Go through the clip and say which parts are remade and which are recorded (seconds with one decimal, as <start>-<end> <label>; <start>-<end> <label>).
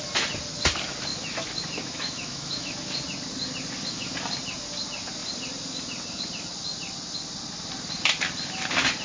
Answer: 0.0-1.1 recorded; 1.1-2.8 remade; 2.8-9.0 recorded